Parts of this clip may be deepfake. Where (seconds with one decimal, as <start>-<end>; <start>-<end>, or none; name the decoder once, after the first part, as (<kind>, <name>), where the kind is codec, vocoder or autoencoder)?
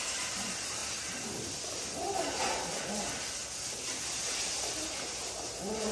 none